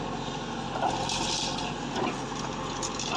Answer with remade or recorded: recorded